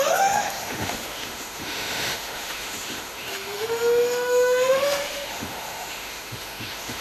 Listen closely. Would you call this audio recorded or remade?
remade